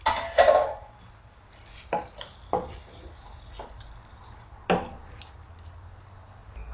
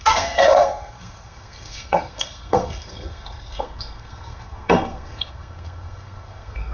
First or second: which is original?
first